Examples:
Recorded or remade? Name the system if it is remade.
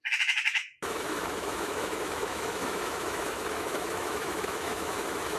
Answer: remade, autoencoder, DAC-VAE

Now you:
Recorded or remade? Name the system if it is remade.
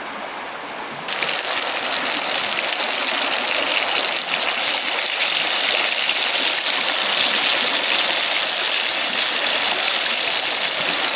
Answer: recorded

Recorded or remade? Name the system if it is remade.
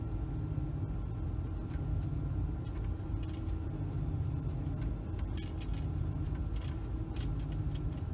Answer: recorded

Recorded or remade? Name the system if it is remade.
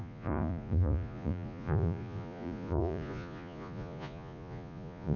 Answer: remade, vocoder, Vocos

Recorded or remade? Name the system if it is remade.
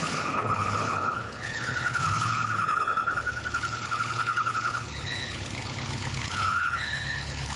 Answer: remade, codec, HILCodec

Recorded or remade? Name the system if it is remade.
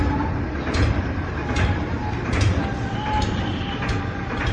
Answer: recorded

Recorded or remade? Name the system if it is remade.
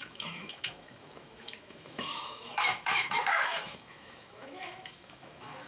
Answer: remade, autoencoder, DAC-VAE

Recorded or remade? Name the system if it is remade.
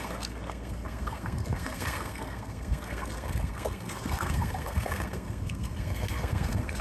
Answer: remade, codec, SNAC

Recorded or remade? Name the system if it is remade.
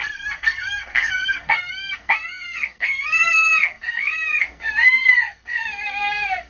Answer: remade, codec, SNAC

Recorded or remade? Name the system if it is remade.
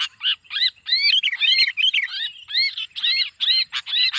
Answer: recorded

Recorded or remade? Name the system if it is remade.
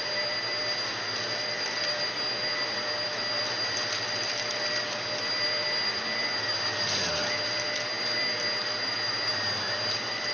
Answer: recorded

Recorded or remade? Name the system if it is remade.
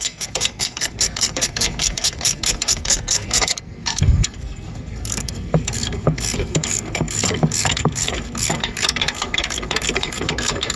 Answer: remade, codec, SNAC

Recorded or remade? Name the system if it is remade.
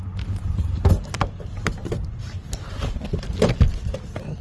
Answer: recorded